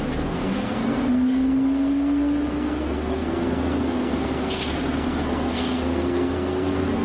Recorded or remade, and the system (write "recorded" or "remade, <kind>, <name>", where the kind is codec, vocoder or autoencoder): remade, codec, SNAC